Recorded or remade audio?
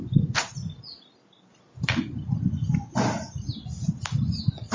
recorded